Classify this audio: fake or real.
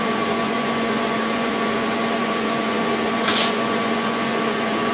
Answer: fake